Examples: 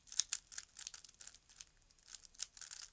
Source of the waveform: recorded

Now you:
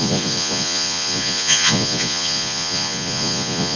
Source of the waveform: remade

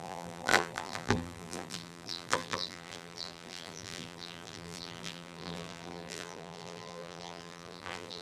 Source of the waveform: remade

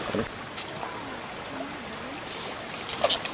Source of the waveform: recorded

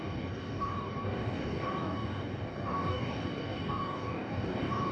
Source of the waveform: remade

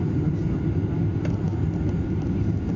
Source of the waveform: recorded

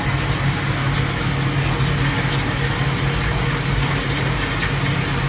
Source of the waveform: recorded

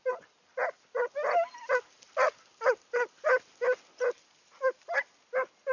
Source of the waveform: recorded